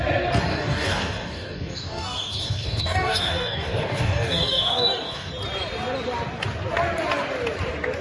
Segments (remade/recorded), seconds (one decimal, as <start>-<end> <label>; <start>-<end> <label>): 0.0-0.5 recorded; 0.5-5.3 remade; 5.3-8.0 recorded